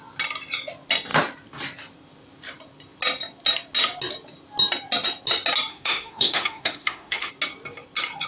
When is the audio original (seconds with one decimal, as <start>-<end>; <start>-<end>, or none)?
0.0-5.7; 7.3-8.3